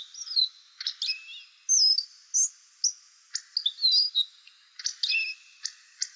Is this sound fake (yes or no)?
no